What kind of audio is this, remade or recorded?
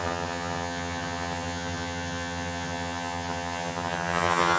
remade